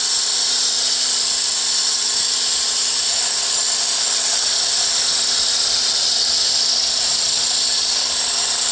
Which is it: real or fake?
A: real